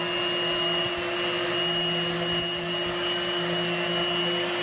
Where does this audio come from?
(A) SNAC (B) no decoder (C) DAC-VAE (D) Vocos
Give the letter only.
B